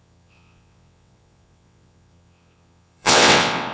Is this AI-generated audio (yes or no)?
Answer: yes